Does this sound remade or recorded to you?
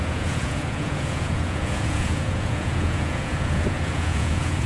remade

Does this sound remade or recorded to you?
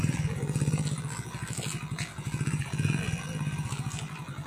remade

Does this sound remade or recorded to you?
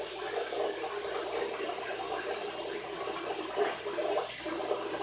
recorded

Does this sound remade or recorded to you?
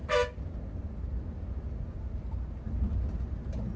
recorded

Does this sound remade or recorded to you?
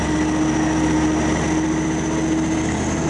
recorded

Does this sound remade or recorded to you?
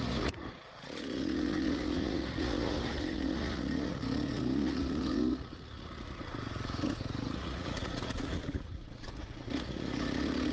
remade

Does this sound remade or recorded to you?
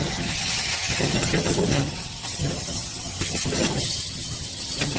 remade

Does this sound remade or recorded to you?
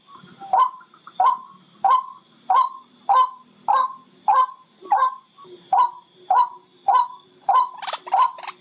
recorded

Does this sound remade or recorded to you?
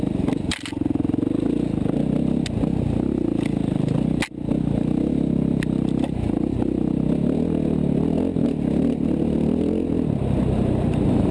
recorded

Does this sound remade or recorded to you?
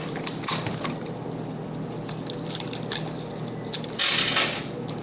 recorded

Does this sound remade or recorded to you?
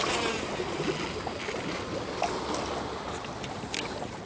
recorded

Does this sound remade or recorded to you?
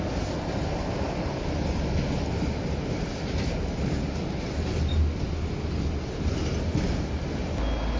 recorded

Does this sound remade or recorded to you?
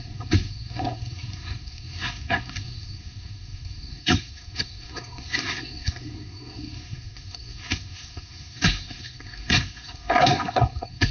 remade